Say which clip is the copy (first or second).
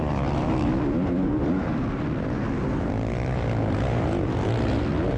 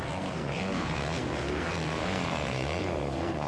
second